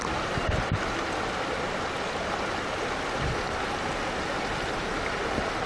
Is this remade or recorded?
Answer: recorded